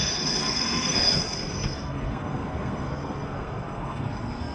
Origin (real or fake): fake